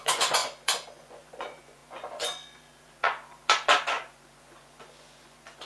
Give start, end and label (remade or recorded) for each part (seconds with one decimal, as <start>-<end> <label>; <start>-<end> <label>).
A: 0.0-5.7 remade